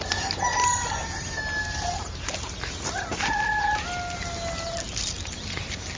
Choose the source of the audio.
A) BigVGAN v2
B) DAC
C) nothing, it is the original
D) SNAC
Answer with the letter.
C